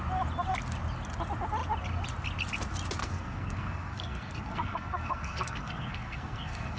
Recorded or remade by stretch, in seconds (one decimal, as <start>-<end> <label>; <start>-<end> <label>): 0.0-3.0 recorded; 3.0-6.8 remade